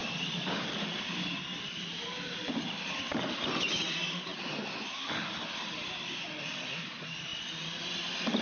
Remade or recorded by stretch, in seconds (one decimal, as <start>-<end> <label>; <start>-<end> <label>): 0.0-0.9 remade; 0.9-1.5 recorded; 1.5-3.7 remade; 3.7-8.4 recorded